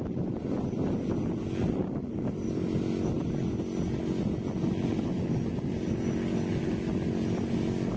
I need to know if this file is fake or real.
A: real